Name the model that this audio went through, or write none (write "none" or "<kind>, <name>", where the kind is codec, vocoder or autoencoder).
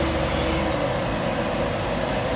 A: none